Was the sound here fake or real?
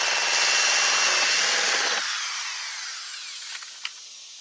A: real